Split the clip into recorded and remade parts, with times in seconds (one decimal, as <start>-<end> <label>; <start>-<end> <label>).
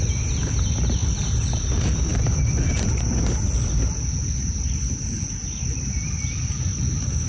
0.0-7.3 recorded